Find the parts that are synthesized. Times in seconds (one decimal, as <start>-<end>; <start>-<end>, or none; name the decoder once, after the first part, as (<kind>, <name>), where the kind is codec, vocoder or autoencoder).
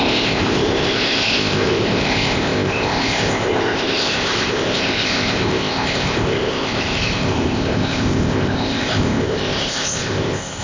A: 0.0-10.6 (codec, ZipCodec)